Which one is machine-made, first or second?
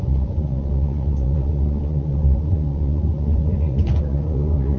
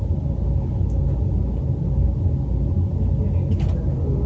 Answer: first